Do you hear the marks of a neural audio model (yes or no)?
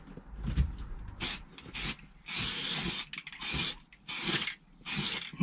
no